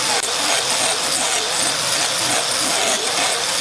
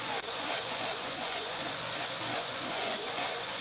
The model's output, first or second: second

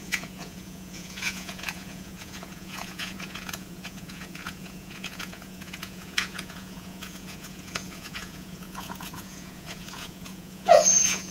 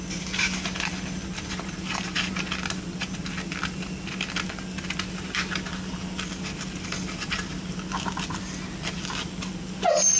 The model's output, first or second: first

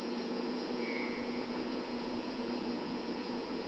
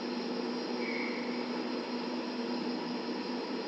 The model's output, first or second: first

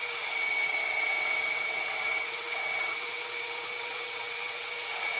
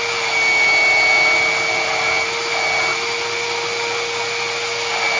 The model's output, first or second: first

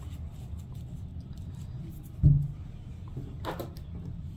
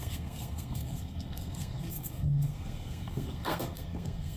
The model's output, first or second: second